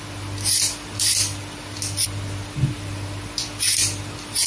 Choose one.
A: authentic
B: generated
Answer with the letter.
A